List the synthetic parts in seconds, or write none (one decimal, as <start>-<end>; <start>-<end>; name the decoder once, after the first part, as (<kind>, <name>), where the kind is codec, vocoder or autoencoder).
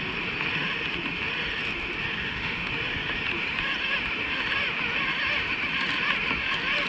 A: 2.2-2.7 (autoencoder, DAC-VAE)